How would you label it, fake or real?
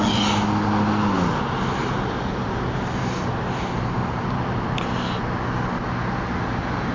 real